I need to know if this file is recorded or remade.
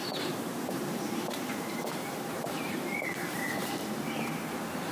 remade